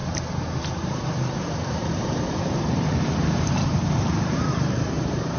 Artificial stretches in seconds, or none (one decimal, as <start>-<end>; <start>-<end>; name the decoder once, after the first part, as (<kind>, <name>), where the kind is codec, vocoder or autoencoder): 0.7-5.4 (vocoder, BigVGAN v2)